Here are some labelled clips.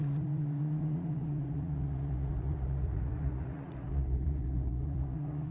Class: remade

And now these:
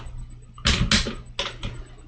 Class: recorded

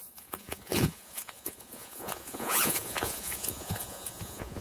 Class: remade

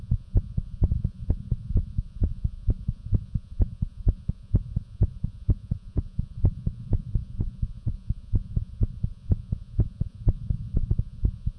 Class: remade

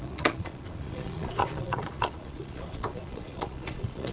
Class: remade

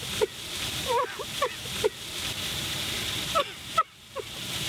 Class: recorded